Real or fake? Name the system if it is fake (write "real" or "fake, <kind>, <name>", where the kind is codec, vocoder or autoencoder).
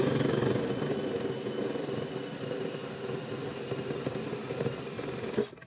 real